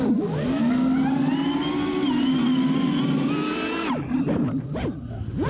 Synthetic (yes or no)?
no